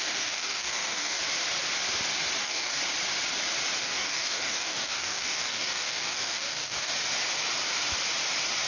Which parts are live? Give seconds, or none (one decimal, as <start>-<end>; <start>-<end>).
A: 1.2-2.4; 2.8-3.8; 6.9-8.7

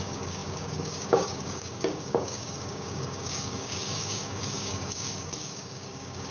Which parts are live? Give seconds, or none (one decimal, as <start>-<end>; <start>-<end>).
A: none

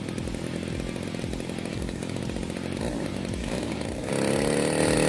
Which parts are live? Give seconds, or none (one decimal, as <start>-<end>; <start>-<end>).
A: 0.0-1.7; 2.2-3.4; 4.1-5.1

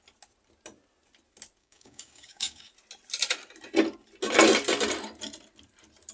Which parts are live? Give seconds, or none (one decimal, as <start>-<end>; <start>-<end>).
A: 0.0-1.6; 2.7-6.1